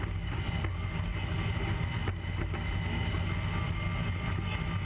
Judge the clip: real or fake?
real